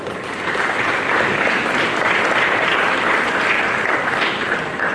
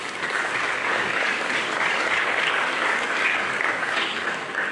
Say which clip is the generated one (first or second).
second